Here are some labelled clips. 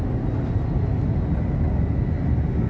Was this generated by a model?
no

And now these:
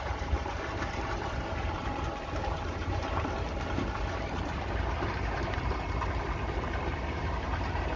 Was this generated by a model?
yes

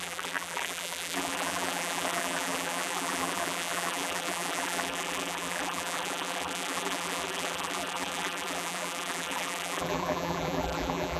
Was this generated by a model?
yes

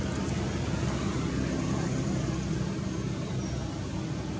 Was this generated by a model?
no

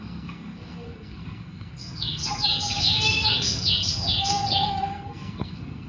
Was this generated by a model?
yes